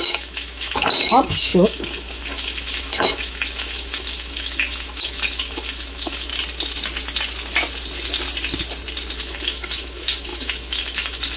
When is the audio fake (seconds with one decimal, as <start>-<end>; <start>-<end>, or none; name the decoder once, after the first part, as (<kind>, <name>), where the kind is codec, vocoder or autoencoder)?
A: 0.0-6.3 (autoencoder, DAC-VAE); 9.2-11.4